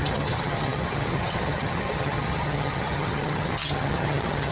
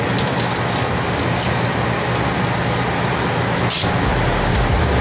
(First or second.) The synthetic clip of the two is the first